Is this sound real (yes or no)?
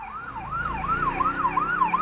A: yes